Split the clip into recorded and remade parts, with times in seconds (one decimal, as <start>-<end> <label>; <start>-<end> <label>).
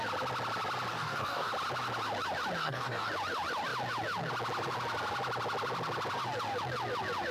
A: 0.0-0.9 recorded; 0.9-1.5 remade; 1.5-2.6 recorded; 2.6-3.1 remade; 3.1-7.3 recorded